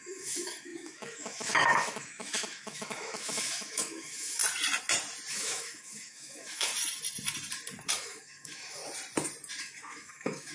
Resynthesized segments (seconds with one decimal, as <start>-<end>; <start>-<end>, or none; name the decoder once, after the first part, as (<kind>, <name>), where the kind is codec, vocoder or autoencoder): 0.0-4.4 (autoencoder, DAC-VAE); 5.3-6.7; 7.9-8.8; 9.6-10.5